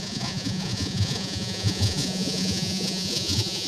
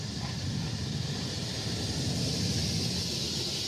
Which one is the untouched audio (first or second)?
second